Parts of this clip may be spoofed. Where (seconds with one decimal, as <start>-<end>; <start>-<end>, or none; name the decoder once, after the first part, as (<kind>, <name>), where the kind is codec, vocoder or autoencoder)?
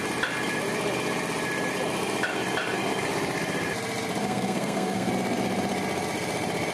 4.2-5.1 (codec, SNAC)